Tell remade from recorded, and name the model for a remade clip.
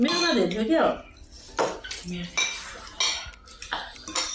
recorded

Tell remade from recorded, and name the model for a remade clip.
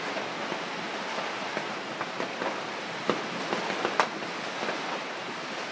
recorded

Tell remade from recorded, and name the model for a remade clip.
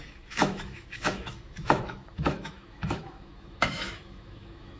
remade, autoencoder, DAC-VAE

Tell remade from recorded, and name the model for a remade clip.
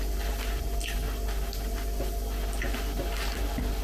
recorded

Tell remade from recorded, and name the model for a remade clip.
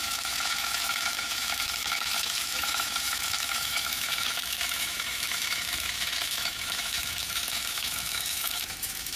remade, autoencoder, DAC-VAE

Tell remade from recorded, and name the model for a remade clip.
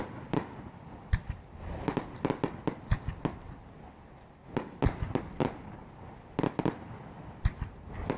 recorded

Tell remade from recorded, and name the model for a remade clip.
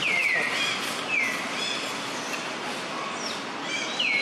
recorded